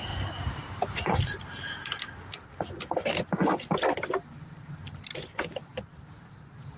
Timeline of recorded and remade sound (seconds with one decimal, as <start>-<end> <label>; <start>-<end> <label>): 0.0-6.8 recorded

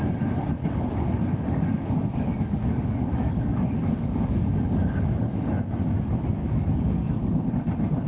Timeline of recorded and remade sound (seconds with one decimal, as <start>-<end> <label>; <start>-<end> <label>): 0.0-0.6 recorded; 0.6-5.5 remade; 5.5-6.4 recorded; 6.4-7.5 remade; 7.5-8.1 recorded

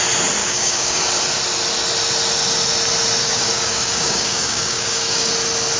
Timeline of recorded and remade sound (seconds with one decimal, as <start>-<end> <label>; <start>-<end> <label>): 0.0-0.4 recorded; 0.4-1.0 remade; 1.0-3.2 recorded; 3.2-5.3 remade; 5.3-5.8 recorded

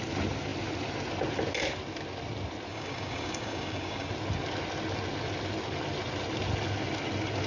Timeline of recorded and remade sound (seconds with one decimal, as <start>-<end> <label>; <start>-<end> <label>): 0.0-2.7 recorded; 2.7-4.1 remade; 4.1-7.5 recorded

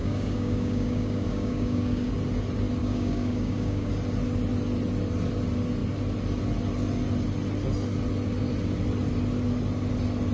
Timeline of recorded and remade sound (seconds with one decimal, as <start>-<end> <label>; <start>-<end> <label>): 0.0-2.1 remade; 2.1-2.8 recorded; 2.8-3.9 remade; 3.9-10.3 recorded

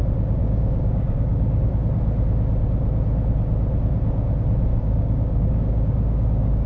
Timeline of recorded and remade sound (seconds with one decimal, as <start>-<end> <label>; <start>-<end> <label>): 0.0-0.4 recorded; 0.4-1.7 remade; 1.7-4.7 recorded; 4.7-6.7 remade

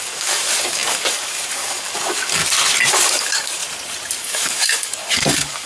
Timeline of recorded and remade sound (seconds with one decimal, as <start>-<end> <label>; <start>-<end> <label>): 0.0-2.4 remade; 2.4-2.9 recorded; 2.9-3.6 remade; 3.6-4.2 recorded; 4.2-5.7 remade

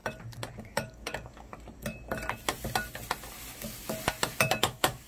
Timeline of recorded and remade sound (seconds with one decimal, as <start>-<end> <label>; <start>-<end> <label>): 0.0-0.6 recorded; 0.6-1.5 remade; 1.5-4.6 recorded; 4.6-5.1 remade